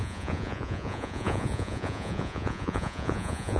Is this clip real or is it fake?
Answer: fake